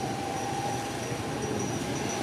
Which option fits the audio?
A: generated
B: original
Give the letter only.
B